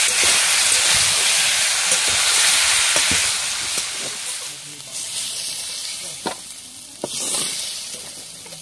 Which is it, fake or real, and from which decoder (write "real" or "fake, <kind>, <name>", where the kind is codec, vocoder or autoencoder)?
real